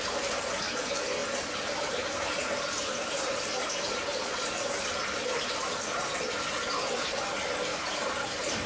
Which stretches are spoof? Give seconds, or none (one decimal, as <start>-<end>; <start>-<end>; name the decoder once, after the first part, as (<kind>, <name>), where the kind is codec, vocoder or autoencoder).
1.2-4.5 (vocoder, BigVGAN v2); 7.7-8.7